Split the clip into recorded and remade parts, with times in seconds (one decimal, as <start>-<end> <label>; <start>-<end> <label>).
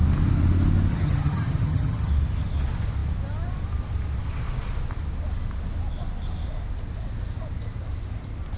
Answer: 0.0-0.9 recorded; 0.9-2.1 remade; 2.1-8.6 recorded